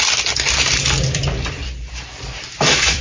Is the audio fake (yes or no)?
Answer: yes